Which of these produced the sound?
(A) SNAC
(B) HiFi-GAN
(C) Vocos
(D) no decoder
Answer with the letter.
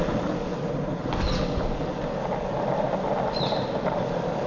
D